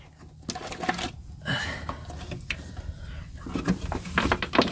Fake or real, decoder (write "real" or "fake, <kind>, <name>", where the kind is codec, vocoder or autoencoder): real